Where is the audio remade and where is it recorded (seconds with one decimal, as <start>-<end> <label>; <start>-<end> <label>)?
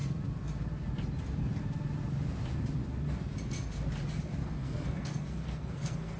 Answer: 0.0-4.4 recorded; 4.4-6.2 remade